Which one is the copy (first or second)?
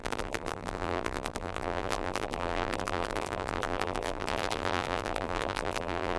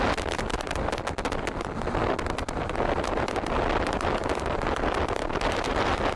first